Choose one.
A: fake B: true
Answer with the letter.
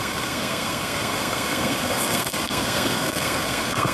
A